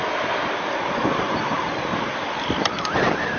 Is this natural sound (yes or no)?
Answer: yes